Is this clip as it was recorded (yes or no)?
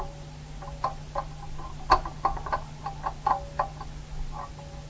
yes